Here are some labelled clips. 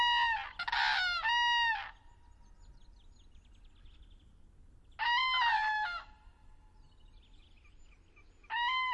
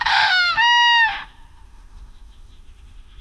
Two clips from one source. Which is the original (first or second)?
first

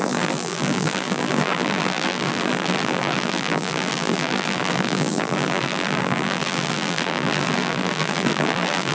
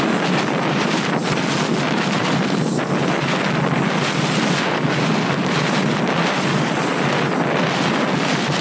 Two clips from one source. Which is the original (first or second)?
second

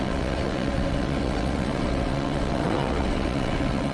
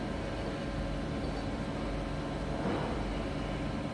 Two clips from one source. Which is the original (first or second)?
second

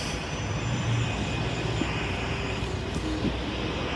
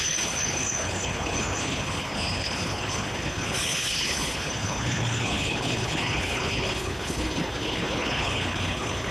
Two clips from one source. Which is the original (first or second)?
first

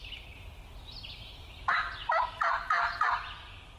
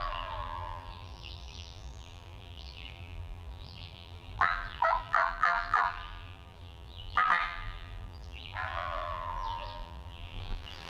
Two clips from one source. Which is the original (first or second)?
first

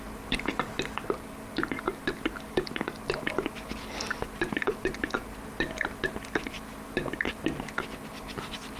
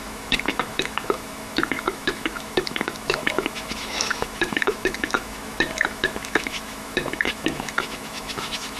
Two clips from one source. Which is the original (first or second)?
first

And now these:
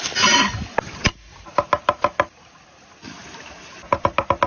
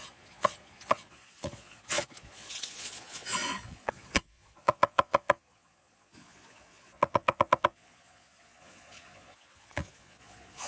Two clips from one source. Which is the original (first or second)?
first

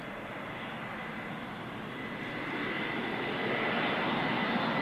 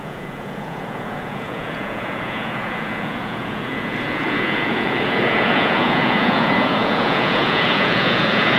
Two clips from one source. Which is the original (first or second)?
first